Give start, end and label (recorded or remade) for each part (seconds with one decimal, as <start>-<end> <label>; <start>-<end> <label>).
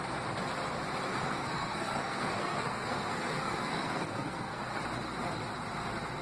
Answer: 0.0-1.1 recorded; 1.1-4.8 remade; 4.8-6.2 recorded